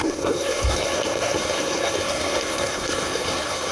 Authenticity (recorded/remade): remade